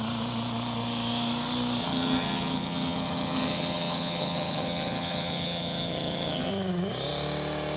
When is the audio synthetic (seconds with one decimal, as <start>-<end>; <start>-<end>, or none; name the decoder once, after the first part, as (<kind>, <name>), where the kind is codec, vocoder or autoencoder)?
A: 1.8-6.5 (vocoder, HiFi-GAN)